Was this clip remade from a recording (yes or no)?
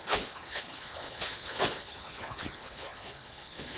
yes